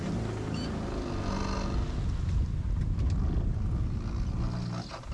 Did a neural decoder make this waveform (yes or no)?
no